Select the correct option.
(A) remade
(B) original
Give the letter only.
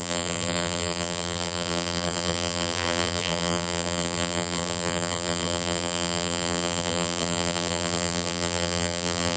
A